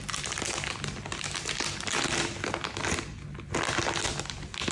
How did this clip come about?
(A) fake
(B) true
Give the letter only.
B